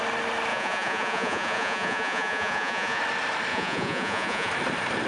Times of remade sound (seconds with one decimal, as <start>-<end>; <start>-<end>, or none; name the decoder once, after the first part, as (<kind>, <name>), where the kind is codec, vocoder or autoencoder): 0.5-3.0 (vocoder, Vocos); 3.5-4.5